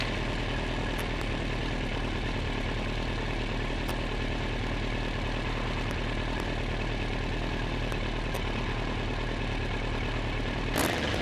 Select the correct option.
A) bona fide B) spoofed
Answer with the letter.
A